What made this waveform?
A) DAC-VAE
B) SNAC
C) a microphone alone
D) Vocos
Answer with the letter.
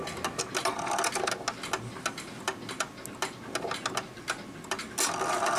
C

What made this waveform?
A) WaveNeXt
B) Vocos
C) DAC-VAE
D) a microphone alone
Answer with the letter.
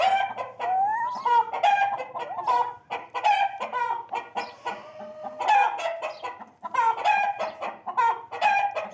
D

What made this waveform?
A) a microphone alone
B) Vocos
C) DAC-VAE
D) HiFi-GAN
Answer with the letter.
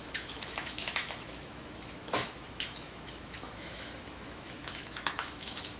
C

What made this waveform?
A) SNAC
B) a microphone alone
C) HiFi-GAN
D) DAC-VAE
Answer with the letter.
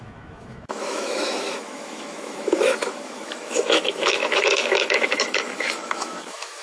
D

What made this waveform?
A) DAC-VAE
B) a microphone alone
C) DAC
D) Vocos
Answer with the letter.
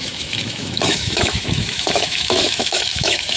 A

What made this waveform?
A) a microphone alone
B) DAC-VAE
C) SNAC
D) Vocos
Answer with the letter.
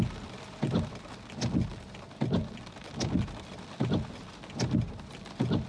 A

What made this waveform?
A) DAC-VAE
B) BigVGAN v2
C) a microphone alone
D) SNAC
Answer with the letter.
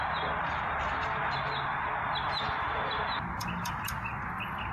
C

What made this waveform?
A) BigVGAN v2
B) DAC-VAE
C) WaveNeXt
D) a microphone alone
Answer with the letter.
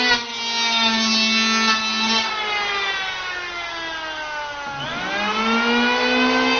D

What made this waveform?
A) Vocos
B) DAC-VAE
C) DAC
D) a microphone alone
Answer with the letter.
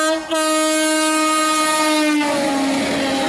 D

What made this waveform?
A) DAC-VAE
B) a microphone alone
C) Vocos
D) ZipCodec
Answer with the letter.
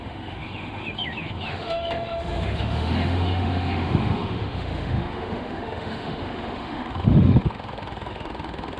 A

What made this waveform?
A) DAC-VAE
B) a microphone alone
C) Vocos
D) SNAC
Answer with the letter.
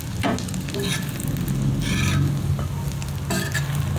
B